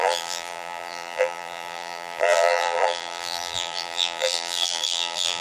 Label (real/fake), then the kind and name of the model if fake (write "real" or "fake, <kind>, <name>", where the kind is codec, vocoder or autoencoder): fake, vocoder, BigVGAN v2